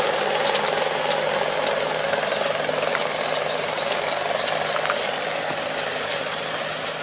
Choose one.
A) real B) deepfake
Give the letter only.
A